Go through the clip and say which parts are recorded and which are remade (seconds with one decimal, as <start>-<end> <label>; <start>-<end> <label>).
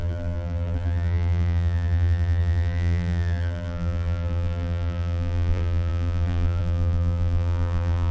0.0-8.1 remade